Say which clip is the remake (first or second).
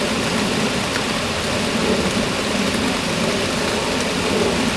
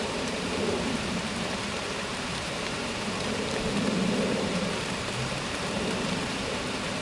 second